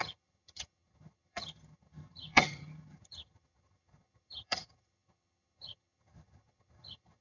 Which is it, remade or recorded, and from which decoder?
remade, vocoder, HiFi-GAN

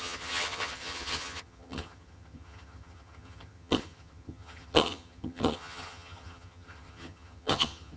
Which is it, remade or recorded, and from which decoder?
remade, vocoder, HiFi-GAN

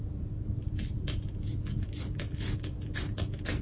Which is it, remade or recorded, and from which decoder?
recorded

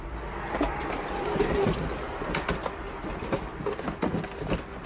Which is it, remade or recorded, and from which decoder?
recorded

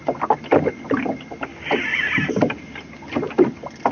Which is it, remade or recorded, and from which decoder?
recorded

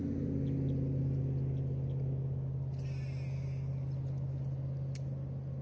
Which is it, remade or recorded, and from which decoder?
recorded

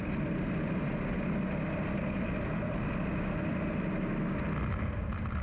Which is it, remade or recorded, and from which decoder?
recorded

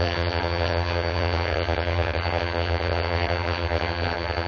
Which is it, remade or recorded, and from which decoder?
remade, vocoder, HiFi-GAN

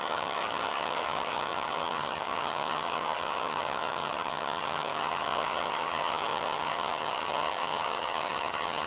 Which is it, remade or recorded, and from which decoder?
remade, vocoder, HiFi-GAN